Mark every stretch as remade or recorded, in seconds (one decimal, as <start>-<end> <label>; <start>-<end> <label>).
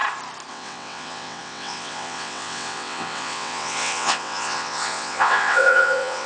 0.0-0.5 recorded; 0.5-6.3 remade